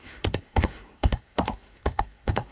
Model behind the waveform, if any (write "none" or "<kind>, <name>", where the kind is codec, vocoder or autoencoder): codec, SNAC